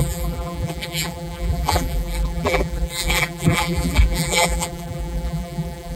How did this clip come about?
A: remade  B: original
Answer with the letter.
A